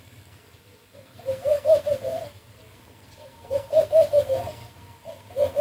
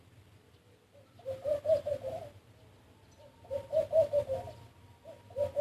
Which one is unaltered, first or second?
second